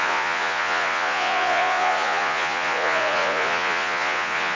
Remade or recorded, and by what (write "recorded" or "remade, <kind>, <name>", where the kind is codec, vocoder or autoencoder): remade, vocoder, Vocos